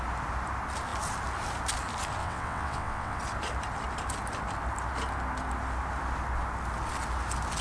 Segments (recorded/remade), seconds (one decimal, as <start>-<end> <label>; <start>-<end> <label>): 0.0-2.2 recorded; 2.2-3.2 remade; 3.2-7.6 recorded